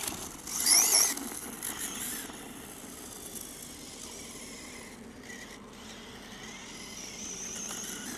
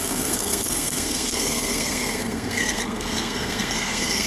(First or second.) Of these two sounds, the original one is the first